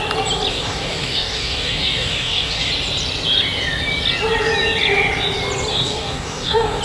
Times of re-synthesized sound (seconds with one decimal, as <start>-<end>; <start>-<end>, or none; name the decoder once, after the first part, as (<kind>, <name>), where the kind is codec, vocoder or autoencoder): 0.5-2.7 (codec, DAC); 5.7-6.8